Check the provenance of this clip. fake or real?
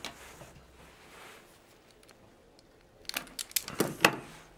real